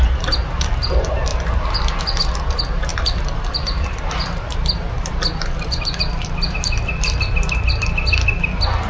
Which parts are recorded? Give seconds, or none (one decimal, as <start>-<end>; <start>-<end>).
0.0-1.3; 2.0-2.9; 7.7-8.9

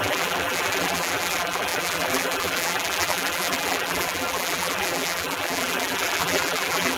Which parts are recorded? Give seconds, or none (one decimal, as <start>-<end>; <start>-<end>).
none

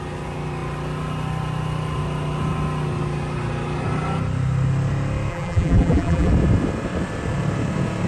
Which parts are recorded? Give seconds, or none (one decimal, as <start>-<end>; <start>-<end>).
0.0-5.3; 6.3-8.1

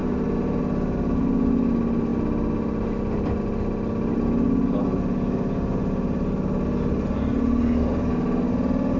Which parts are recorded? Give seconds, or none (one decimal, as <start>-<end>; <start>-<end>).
0.6-9.0

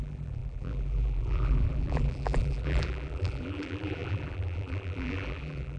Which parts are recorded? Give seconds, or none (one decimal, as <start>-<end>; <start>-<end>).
none

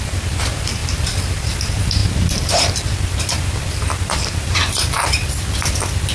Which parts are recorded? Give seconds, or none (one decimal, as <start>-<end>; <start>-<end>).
2.0-3.2

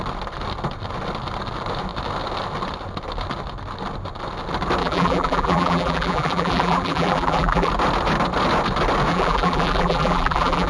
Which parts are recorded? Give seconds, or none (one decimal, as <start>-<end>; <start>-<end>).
0.0-4.8; 7.7-9.1

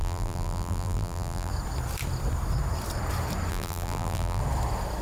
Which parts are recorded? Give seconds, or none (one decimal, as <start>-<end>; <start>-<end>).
1.5-3.5; 4.4-5.0